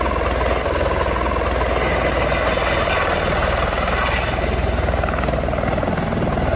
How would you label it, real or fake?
real